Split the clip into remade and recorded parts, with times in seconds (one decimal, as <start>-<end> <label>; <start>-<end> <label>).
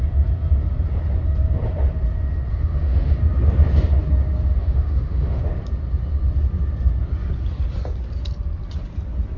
0.0-2.5 recorded; 2.5-3.1 remade; 3.1-4.6 recorded; 4.6-5.4 remade; 5.4-9.4 recorded